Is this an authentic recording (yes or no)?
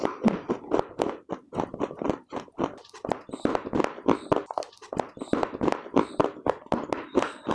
yes